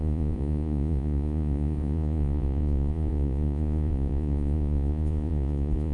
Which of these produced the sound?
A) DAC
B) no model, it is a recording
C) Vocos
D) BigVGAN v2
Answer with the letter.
C